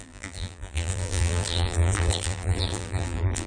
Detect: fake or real fake